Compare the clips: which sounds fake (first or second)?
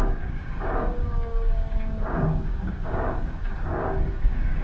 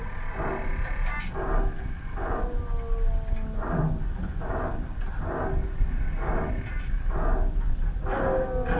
first